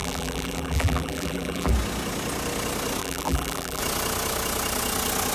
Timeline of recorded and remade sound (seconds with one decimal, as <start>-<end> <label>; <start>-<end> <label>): 0.0-1.7 remade; 1.7-3.0 recorded; 3.0-3.8 remade; 3.8-5.3 recorded